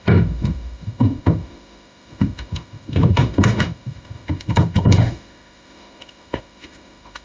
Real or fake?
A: fake